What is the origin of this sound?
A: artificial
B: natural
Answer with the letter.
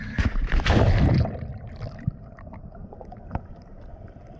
B